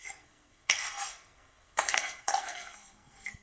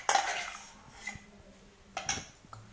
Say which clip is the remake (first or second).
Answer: first